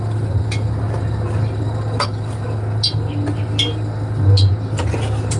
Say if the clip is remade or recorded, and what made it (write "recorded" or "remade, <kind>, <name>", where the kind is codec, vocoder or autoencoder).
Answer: recorded